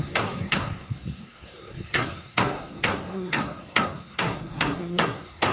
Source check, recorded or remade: remade